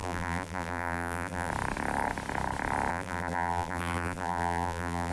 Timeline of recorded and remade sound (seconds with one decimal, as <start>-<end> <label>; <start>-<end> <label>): 0.0-1.5 remade; 1.5-2.9 recorded; 2.9-5.1 remade